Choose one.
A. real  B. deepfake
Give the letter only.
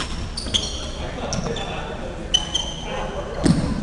A